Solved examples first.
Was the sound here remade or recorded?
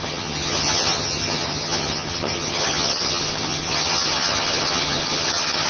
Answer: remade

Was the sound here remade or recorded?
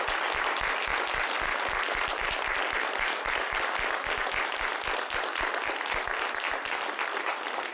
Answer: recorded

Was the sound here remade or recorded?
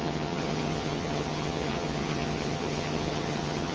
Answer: remade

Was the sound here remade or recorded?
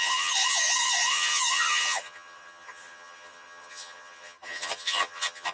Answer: remade